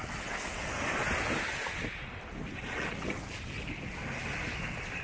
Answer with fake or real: real